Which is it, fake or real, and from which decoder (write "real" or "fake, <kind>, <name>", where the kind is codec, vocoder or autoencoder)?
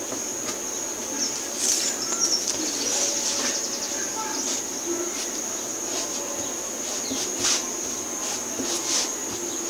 real